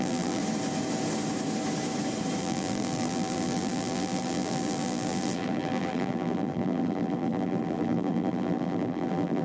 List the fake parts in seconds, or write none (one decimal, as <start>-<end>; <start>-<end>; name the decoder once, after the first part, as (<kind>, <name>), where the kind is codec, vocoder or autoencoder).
0.0-0.4 (vocoder, BigVGAN v2); 2.4-9.4